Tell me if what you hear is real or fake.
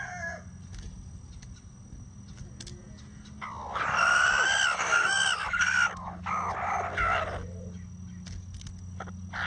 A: real